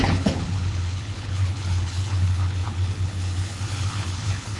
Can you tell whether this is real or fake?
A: fake